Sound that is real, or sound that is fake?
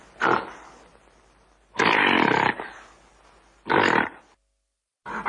real